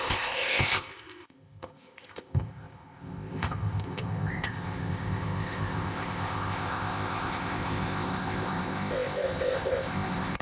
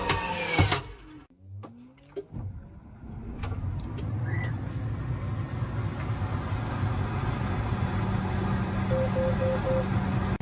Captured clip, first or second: second